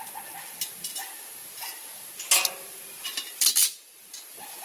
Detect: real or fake real